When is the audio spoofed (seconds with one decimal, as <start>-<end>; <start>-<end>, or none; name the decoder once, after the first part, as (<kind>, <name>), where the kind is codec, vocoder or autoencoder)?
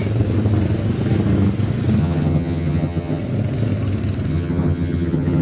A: 2.0-3.2 (vocoder, HiFi-GAN); 4.3-5.4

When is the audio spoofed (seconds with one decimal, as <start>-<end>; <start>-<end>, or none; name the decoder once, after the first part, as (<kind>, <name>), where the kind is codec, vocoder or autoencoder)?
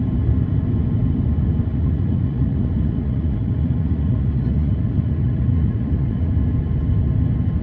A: 1.7-6.3 (vocoder, Vocos)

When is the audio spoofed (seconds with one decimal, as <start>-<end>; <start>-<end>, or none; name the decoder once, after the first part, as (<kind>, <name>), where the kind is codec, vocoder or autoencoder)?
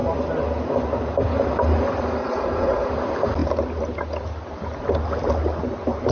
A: 2.2-2.9 (vocoder, Vocos)